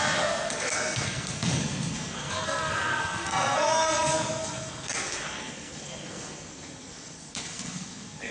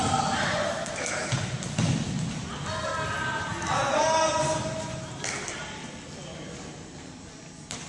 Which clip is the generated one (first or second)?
first